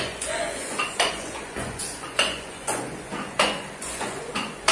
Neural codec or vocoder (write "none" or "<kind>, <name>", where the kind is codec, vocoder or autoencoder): vocoder, Vocos